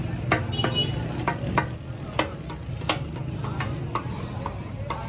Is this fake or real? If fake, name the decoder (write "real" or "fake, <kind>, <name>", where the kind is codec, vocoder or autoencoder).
real